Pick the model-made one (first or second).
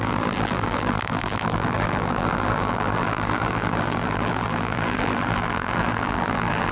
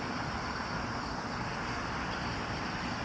first